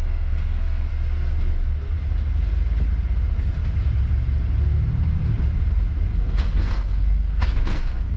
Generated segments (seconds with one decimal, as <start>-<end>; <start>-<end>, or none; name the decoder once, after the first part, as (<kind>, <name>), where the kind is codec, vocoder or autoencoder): 0.0-0.9 (codec, SNAC); 6.1-8.2